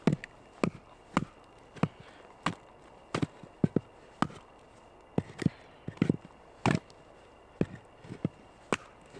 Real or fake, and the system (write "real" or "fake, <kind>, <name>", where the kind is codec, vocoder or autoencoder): real